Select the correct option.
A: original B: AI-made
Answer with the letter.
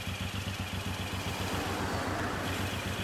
A